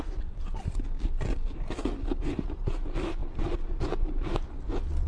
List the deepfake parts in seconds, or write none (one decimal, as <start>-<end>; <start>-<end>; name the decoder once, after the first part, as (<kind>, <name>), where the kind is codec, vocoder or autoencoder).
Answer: none